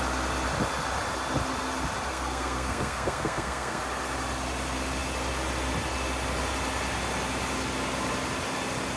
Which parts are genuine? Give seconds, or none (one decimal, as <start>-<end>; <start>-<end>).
0.0-2.1; 3.8-9.0